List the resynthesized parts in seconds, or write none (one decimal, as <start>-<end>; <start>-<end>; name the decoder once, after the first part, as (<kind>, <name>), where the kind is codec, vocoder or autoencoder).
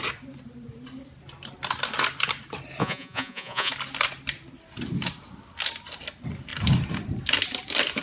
2.8-3.7 (vocoder, Vocos)